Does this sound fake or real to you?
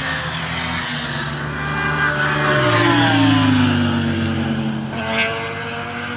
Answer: real